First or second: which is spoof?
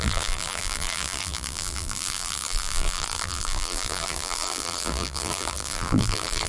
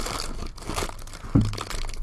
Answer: first